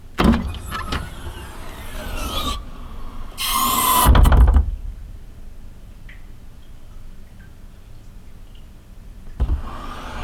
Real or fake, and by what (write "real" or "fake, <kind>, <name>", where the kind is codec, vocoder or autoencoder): real